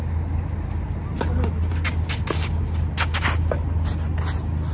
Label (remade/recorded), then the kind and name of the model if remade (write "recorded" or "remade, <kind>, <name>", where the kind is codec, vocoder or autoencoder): recorded